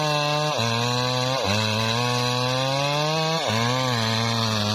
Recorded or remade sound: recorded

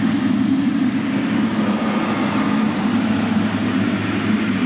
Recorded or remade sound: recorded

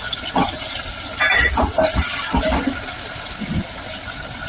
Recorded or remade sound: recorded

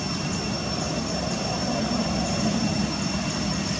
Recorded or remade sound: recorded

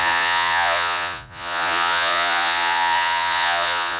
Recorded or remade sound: remade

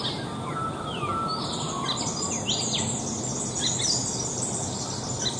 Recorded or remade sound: recorded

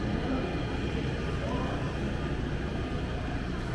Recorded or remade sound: recorded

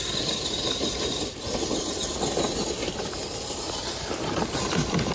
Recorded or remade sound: recorded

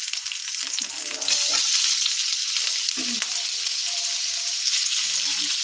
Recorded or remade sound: recorded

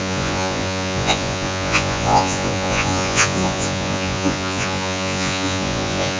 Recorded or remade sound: remade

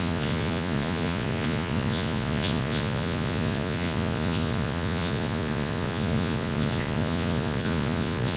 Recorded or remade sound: remade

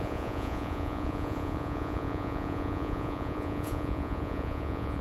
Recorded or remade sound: remade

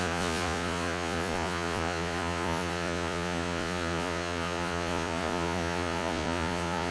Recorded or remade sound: remade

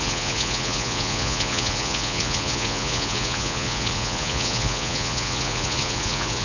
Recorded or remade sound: remade